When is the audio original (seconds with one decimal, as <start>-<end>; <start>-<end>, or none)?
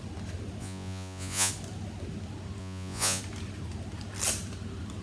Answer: 0.0-0.6; 1.5-2.6; 3.2-5.0